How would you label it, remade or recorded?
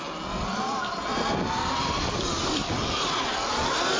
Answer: recorded